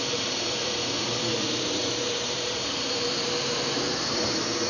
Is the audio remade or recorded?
remade